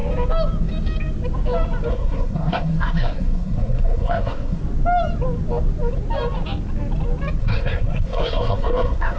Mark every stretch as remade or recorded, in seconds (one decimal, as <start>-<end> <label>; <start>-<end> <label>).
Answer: 0.0-1.9 recorded; 1.9-4.6 remade; 4.6-7.4 recorded; 7.4-9.2 remade